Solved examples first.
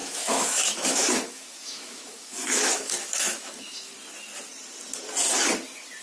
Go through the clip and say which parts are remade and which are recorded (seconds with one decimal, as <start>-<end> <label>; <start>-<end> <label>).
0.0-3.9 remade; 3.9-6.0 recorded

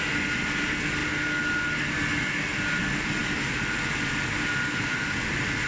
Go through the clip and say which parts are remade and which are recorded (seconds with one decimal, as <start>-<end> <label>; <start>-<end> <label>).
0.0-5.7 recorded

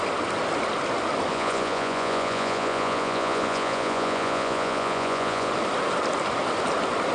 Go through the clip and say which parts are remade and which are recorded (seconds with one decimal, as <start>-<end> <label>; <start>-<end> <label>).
0.0-1.3 recorded; 1.3-5.5 remade; 5.5-7.1 recorded